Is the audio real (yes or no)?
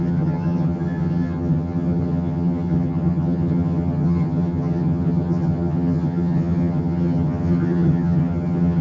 no